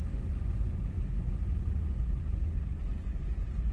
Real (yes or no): no